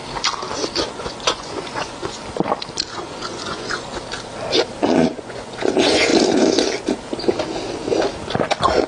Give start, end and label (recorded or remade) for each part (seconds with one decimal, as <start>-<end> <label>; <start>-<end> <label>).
0.0-0.9 recorded; 0.9-2.2 remade; 2.2-2.9 recorded; 2.9-4.0 remade; 4.0-4.7 recorded; 4.7-6.1 remade; 6.1-8.9 recorded